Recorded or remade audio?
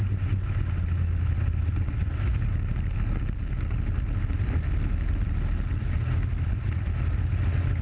recorded